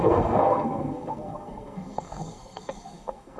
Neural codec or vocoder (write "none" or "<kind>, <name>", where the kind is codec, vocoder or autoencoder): codec, SNAC